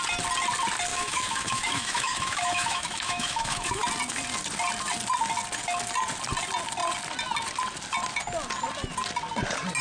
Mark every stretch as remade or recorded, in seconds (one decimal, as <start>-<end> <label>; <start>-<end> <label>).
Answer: 0.0-0.9 recorded; 0.9-3.8 remade; 3.8-9.8 recorded